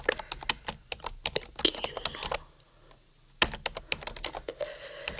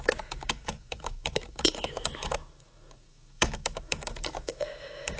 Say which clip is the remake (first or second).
second